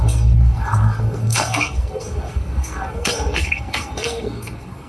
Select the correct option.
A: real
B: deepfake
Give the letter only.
B